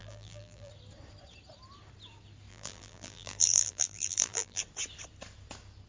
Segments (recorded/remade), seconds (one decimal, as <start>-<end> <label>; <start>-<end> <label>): 0.0-0.7 remade; 0.7-2.5 recorded; 2.5-4.6 remade; 4.6-5.9 recorded